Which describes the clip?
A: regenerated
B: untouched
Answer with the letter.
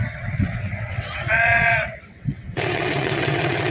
A